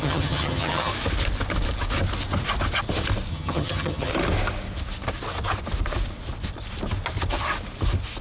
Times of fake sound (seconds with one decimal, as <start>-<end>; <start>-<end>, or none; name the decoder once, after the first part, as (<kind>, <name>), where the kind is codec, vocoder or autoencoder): 0.0-0.9 (vocoder, HiFi-GAN); 3.3-4.1